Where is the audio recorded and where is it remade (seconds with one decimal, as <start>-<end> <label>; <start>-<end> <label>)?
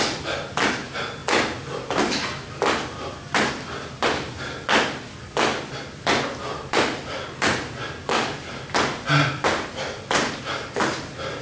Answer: 0.0-11.4 recorded